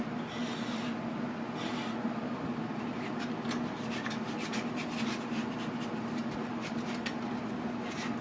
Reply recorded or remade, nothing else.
recorded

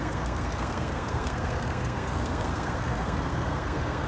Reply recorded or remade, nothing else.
remade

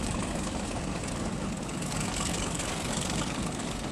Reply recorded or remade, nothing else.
remade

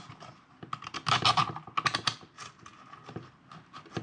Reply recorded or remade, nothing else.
recorded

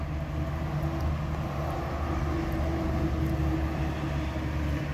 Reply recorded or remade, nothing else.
recorded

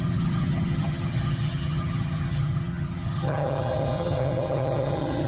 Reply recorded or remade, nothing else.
remade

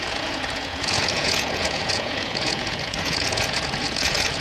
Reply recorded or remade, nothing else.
remade